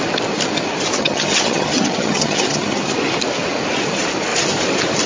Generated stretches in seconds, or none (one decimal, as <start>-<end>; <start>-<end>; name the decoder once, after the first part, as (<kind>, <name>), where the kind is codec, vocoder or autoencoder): 1.0-2.9 (vocoder, HiFi-GAN)